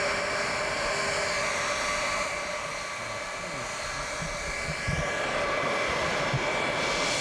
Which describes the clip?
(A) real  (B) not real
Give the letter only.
A